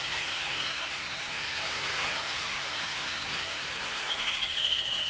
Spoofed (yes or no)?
yes